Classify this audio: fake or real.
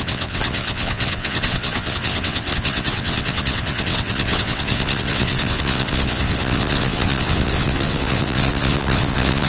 fake